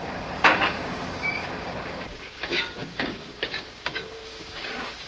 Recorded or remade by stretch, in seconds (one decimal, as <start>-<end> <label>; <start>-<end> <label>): 0.0-5.1 remade